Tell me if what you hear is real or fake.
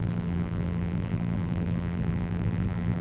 fake